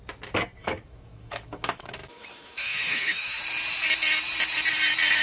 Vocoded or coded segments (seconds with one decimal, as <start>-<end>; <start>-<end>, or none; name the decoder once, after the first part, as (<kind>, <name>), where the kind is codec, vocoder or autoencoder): 0.6-3.4 (autoencoder, DAC-VAE)